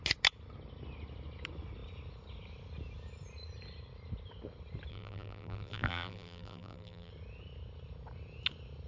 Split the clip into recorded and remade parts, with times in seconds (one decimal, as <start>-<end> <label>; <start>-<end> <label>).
0.0-4.9 recorded; 4.9-7.1 remade; 7.1-8.9 recorded